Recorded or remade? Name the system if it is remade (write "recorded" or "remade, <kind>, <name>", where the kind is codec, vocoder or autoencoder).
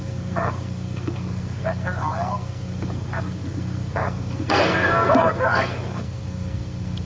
remade, codec, SNAC